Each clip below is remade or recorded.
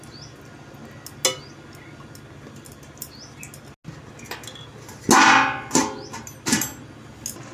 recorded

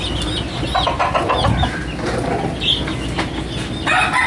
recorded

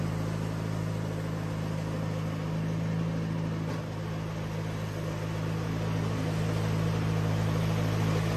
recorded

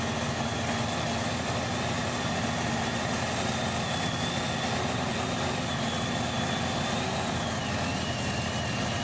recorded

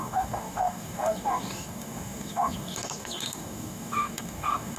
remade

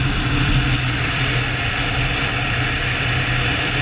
recorded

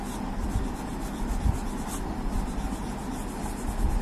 recorded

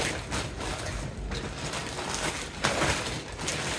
recorded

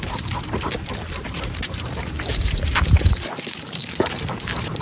remade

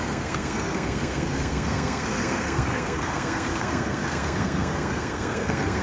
remade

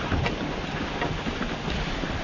recorded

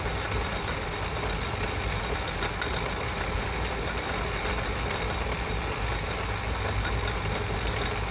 recorded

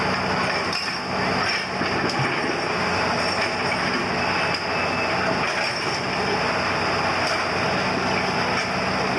recorded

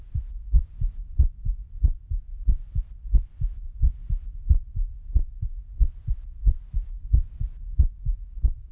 remade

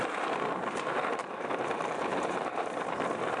remade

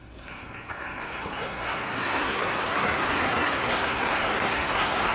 remade